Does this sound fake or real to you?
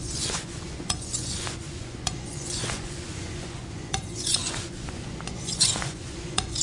fake